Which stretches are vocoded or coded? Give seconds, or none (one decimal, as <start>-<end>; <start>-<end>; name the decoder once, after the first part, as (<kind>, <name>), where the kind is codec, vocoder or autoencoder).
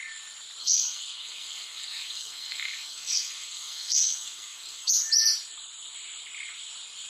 0.6-4.9 (codec, SNAC)